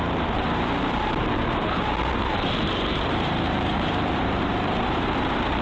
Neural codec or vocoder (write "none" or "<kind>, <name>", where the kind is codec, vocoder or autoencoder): vocoder, BigVGAN v2